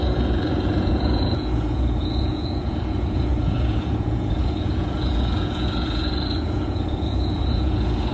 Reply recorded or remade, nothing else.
remade